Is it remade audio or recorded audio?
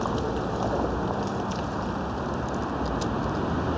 recorded